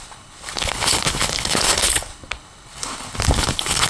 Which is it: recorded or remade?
remade